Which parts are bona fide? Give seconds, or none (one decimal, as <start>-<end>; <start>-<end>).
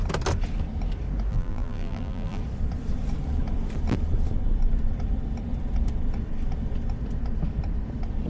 0.0-1.3; 2.4-8.3